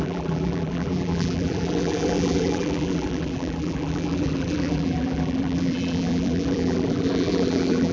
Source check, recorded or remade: remade